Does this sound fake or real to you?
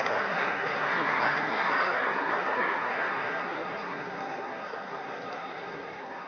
fake